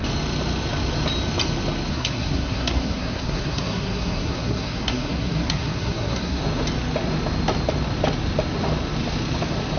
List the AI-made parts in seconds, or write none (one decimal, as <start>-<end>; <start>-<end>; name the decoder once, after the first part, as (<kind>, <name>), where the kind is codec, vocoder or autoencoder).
1.9-6.4 (codec, SNAC)